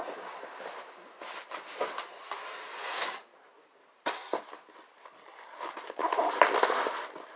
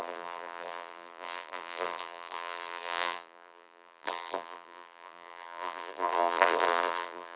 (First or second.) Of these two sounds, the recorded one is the first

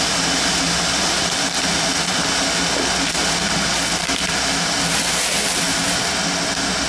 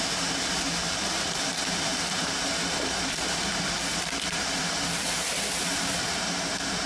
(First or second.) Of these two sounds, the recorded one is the first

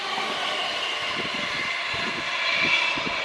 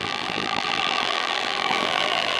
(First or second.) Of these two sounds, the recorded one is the first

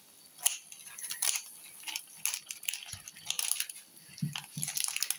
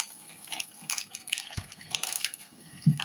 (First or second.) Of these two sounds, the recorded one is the first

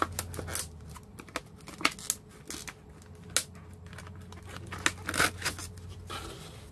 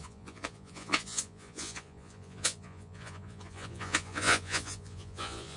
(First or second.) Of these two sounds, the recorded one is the first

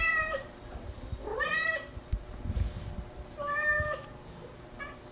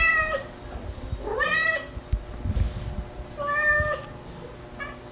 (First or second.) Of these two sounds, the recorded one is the second